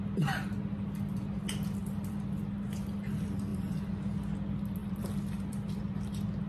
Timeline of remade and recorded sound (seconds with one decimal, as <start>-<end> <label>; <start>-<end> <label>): 0.0-1.8 recorded; 1.8-2.4 remade; 2.4-3.5 recorded; 3.5-4.0 remade; 4.0-4.8 recorded; 4.8-6.5 remade